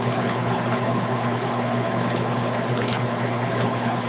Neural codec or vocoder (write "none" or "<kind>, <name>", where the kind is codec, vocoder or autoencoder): codec, HILCodec